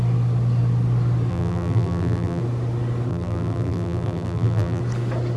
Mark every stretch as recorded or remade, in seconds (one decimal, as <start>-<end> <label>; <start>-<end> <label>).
0.0-1.3 recorded; 1.3-2.4 remade; 2.4-3.1 recorded; 3.1-4.8 remade; 4.8-5.4 recorded